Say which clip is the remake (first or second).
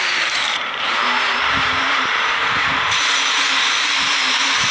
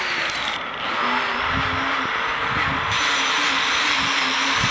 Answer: first